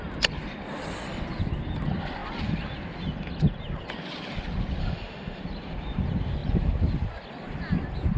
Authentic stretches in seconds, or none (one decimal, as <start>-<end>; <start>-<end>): 0.0-4.8; 5.4-8.2

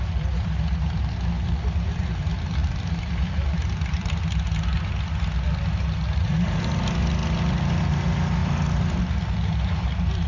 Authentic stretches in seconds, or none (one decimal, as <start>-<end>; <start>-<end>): 0.0-2.6; 4.2-7.2; 7.7-8.4; 9.0-10.3